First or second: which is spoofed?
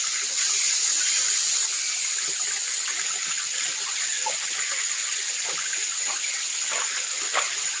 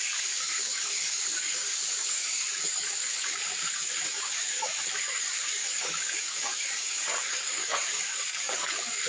second